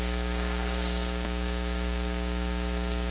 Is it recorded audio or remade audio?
remade